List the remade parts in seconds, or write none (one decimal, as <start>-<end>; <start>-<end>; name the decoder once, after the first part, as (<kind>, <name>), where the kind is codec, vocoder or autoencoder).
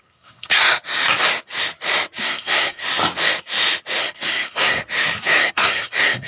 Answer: 0.0-0.6 (codec, SNAC); 2.2-2.8; 4.0-4.8; 5.4-6.3